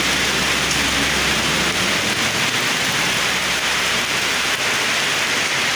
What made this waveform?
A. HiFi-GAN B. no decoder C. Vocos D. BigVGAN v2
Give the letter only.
B